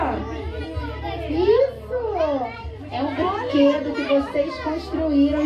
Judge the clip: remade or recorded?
recorded